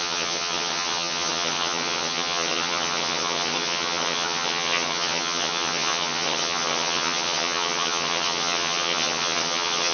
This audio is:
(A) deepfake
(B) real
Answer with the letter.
A